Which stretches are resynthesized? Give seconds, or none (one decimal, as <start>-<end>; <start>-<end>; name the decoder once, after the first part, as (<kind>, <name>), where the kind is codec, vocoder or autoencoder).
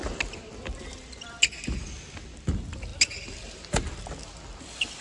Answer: none